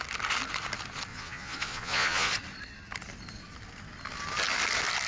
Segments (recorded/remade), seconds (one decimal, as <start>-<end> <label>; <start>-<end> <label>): 0.0-1.1 recorded; 1.1-2.3 remade; 2.3-5.1 recorded